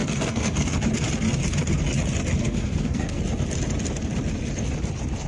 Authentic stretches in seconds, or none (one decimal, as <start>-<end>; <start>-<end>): 0.8-2.4; 3.2-5.3

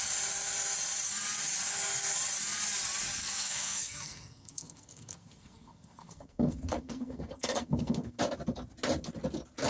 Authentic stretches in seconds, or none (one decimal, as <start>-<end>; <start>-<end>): 0.0-3.2; 8.2-9.7

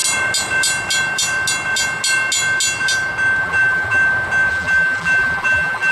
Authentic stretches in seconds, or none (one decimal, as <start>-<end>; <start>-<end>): 0.0-3.4; 4.0-4.5

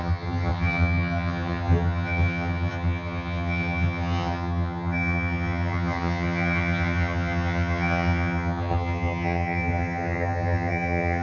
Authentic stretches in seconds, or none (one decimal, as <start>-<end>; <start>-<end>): none

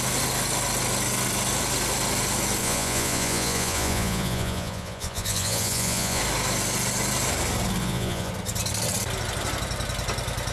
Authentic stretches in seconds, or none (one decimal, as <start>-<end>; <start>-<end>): 0.0-2.6; 6.2-7.8; 8.3-10.5

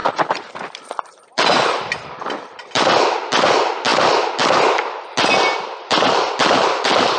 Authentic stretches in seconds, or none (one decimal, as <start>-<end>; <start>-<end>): 3.5-7.2

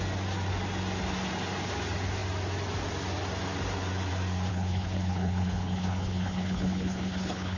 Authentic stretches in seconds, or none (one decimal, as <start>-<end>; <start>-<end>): 0.0-4.5

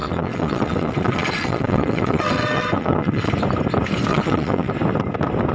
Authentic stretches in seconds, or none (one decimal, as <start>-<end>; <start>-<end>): 3.3-4.1; 4.7-5.5